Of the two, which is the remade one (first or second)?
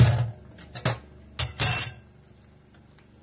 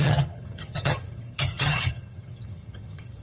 second